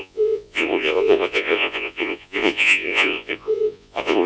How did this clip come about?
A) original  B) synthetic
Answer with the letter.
B